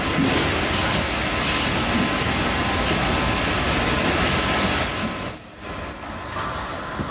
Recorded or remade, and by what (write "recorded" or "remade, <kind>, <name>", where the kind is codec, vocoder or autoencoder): recorded